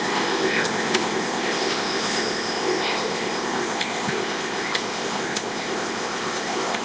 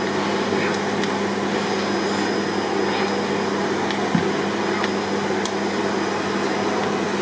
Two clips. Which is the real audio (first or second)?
second